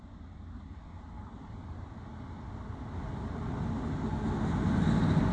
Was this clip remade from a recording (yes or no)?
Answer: no